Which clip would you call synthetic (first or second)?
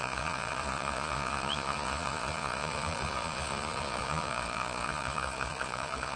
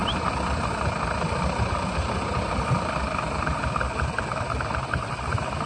first